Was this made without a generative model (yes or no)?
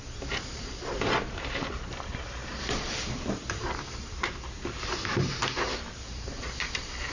no